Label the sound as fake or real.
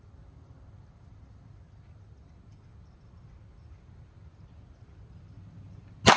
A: real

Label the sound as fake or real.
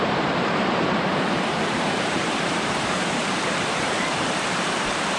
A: fake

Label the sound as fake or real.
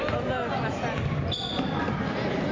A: real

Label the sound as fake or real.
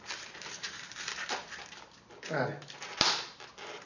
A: fake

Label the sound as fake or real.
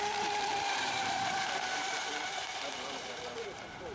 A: fake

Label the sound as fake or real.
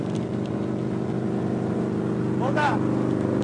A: real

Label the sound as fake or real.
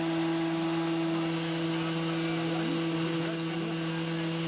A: real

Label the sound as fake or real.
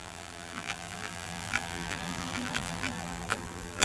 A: fake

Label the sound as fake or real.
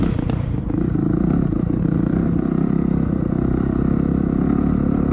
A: fake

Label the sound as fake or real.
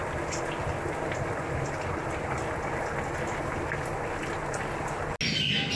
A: real